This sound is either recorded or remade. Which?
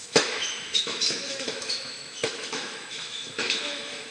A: remade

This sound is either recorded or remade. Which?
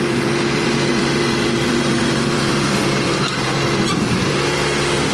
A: remade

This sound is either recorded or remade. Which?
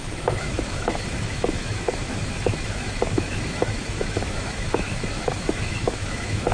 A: remade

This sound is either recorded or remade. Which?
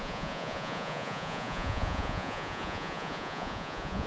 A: remade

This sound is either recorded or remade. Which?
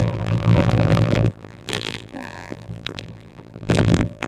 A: remade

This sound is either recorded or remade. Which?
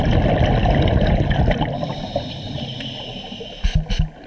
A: recorded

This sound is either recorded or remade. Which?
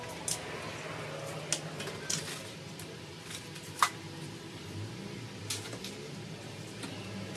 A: recorded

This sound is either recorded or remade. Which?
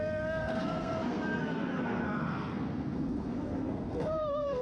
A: remade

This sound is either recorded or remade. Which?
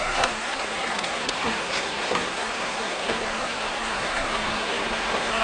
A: remade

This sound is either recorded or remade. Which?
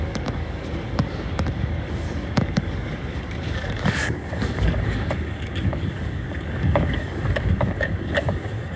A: remade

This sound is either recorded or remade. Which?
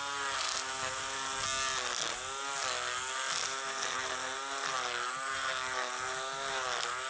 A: recorded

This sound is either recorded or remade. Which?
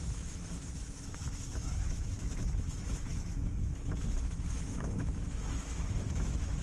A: remade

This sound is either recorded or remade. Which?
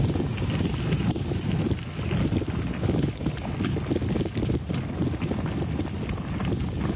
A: recorded